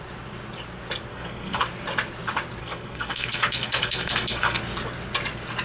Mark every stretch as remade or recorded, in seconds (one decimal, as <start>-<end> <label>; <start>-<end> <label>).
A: 0.0-1.1 recorded; 1.1-1.6 remade; 1.6-2.6 recorded; 2.6-4.6 remade; 4.6-5.6 recorded